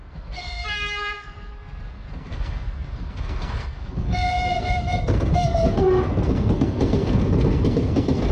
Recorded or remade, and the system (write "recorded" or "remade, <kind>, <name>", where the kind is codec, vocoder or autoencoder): remade, codec, SNAC